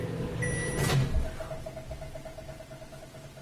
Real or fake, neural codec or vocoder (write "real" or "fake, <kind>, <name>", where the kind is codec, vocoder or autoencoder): real